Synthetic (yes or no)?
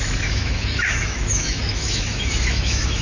yes